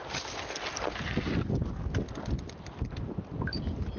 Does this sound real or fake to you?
real